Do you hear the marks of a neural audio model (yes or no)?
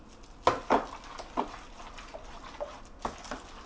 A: no